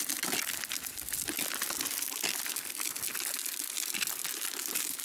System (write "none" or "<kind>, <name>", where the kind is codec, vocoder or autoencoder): none